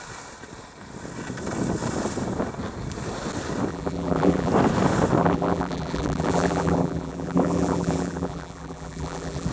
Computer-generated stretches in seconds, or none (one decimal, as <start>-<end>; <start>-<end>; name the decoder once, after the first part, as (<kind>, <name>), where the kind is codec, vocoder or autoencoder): 3.7-4.5 (vocoder, BigVGAN v2); 5.2-9.5